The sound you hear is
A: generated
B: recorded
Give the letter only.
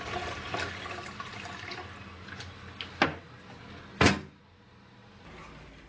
B